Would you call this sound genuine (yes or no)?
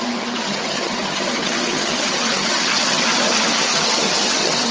no